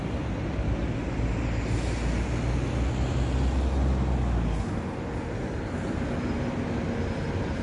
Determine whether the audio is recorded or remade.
recorded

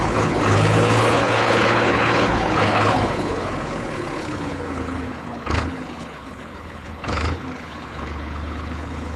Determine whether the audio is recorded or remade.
remade